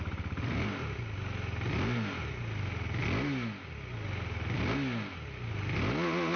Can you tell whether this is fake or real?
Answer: real